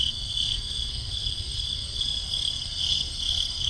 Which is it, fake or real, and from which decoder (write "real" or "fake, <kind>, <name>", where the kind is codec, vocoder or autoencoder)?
fake, codec, SNAC